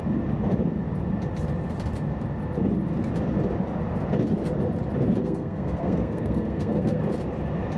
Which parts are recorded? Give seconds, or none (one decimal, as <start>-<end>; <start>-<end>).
0.0-5.2; 7.0-7.8